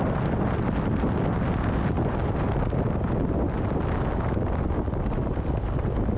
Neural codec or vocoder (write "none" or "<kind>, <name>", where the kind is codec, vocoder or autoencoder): none